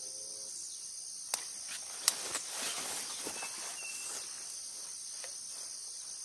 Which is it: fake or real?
real